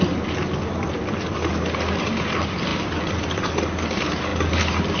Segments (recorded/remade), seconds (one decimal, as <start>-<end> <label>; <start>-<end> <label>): 0.0-5.0 recorded